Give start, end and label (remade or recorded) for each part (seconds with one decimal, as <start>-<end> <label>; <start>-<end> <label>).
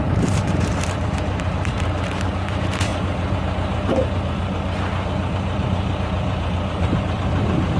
0.0-7.8 remade